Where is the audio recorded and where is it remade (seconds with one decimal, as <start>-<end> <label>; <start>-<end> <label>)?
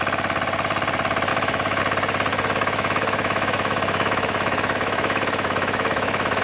0.0-1.3 recorded; 1.3-1.8 remade; 1.8-2.3 recorded; 2.3-6.4 remade